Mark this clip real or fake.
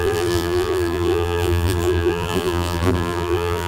fake